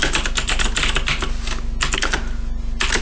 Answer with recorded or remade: recorded